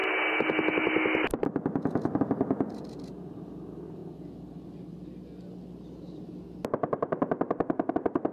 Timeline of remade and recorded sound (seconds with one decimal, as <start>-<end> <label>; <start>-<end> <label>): 0.0-8.3 recorded